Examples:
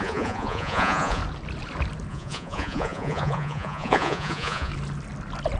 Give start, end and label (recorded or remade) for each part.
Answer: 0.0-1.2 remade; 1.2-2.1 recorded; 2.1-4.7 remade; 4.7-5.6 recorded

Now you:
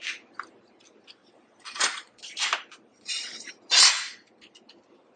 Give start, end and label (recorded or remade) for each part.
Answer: 0.0-1.2 recorded; 1.2-2.2 remade; 2.2-2.9 recorded; 2.9-3.5 remade; 3.5-5.2 recorded

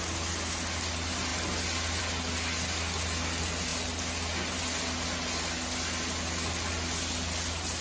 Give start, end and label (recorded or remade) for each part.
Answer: 0.0-7.8 recorded

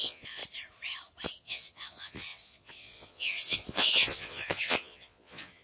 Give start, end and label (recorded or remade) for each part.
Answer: 0.0-0.4 remade; 0.4-1.3 recorded; 1.3-5.6 remade

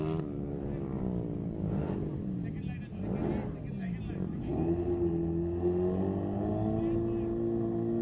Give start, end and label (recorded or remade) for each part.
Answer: 0.0-8.0 recorded

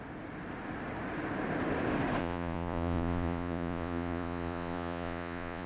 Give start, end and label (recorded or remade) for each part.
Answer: 0.0-2.2 recorded; 2.2-5.7 remade

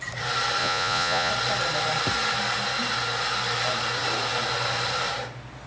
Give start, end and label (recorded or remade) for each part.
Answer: 0.0-0.6 recorded; 0.6-1.3 remade; 1.3-5.7 recorded